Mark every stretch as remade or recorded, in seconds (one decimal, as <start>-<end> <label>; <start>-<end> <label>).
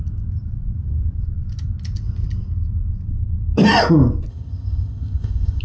0.0-4.3 recorded; 4.3-5.6 remade